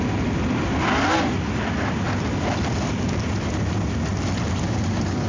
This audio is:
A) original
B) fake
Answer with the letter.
A